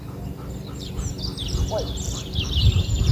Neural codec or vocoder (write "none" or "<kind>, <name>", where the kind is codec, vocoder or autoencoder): vocoder, BigVGAN v2